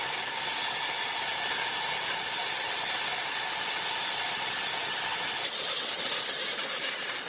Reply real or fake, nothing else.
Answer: real